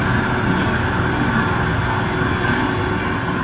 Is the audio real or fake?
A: real